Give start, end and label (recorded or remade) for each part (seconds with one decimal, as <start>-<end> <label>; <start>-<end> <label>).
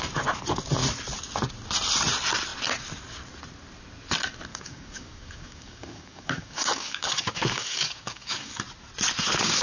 0.0-4.5 recorded; 4.5-8.6 remade; 8.6-9.6 recorded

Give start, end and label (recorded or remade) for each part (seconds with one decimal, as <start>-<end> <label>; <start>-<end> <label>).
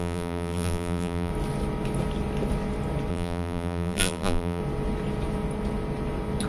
0.0-1.3 remade; 1.3-3.1 recorded; 3.1-4.6 remade; 4.6-6.5 recorded